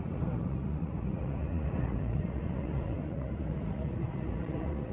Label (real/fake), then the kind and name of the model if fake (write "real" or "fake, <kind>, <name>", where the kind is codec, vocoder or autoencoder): fake, vocoder, Vocos